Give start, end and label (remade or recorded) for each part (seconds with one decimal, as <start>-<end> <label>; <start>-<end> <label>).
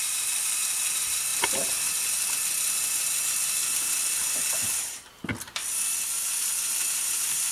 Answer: 0.0-7.5 recorded